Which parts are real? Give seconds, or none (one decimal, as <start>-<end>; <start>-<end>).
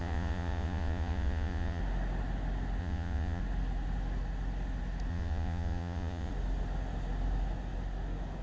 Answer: 1.8-2.8; 3.4-5.1; 6.3-8.4